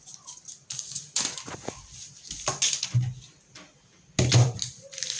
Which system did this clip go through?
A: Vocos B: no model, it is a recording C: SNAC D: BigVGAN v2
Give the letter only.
B